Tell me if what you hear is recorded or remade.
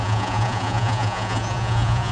remade